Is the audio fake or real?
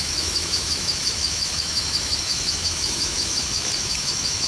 fake